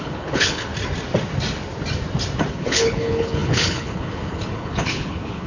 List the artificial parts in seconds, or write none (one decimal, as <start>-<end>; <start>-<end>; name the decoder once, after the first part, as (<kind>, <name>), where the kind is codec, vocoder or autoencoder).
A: 0.0-0.7 (codec, HILCodec); 2.5-5.5